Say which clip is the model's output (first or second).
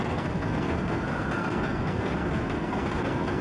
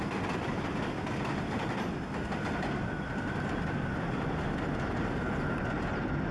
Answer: first